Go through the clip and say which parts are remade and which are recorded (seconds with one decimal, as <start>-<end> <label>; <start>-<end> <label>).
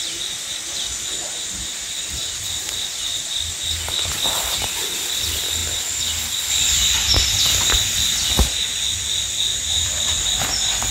0.0-2.2 recorded; 2.2-3.5 remade; 3.5-9.5 recorded; 9.5-10.9 remade